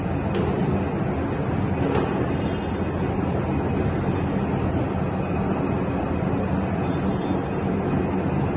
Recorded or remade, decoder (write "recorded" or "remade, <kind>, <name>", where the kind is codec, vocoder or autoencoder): recorded